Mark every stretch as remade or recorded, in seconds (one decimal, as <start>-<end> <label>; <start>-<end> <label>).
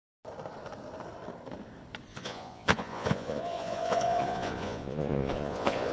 0.0-2.1 recorded; 2.1-5.9 remade